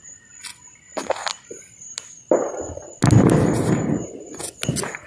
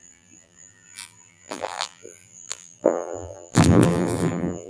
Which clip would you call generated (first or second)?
second